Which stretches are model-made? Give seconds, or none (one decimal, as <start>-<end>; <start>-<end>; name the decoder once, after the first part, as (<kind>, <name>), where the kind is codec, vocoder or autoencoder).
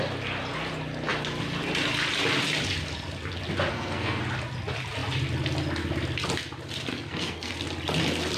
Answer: 3.7-4.2 (codec, SNAC); 6.9-7.5